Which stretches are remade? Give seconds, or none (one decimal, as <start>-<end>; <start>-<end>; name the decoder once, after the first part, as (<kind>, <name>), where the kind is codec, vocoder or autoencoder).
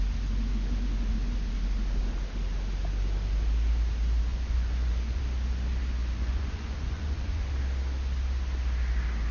4.3-5.2 (vocoder, Vocos); 6.0-7.5